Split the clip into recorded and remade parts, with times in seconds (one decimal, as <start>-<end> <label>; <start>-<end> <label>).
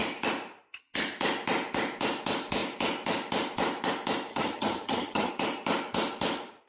0.0-4.3 recorded; 4.3-5.3 remade; 5.3-6.7 recorded